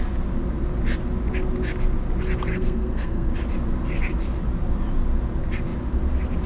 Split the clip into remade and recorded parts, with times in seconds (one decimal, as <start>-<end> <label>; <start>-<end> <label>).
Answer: 0.0-2.5 recorded; 2.5-3.3 remade; 3.3-6.5 recorded